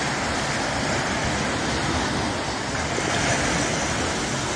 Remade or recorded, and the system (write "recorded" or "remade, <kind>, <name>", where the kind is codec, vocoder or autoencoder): recorded